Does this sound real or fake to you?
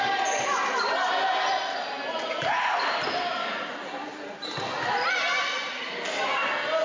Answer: real